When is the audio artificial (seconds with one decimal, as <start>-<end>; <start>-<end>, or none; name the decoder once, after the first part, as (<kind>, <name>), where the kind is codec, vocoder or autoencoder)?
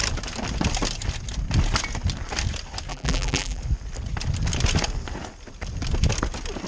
2.9-3.6 (vocoder, BigVGAN v2)